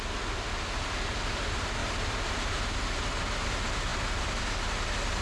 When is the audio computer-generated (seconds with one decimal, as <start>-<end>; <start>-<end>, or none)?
none